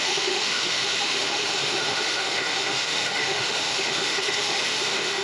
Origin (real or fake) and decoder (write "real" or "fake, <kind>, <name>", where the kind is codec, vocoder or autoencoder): fake, autoencoder, DAC-VAE